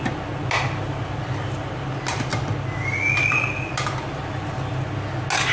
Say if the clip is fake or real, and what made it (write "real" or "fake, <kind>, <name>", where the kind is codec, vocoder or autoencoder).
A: real